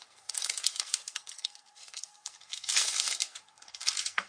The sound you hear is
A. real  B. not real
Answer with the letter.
B